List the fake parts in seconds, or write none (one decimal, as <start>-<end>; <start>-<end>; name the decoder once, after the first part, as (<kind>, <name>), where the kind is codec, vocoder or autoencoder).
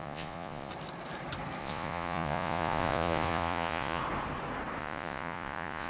0.0-0.7 (vocoder, Vocos); 1.6-4.0; 4.8-5.9